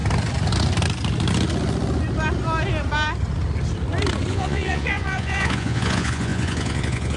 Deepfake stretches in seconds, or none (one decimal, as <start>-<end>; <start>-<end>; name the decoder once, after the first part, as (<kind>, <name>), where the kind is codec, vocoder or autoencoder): 4.3-7.2 (vocoder, Vocos)